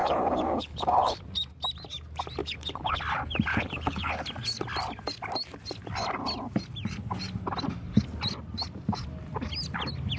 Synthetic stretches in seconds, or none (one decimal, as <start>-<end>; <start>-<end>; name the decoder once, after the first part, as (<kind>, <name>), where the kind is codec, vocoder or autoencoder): 0.0-1.2 (codec, HILCodec); 2.4-3.0; 3.5-4.1